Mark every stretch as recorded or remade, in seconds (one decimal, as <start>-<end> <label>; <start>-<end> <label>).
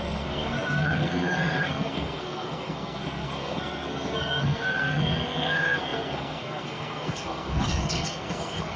0.0-8.8 remade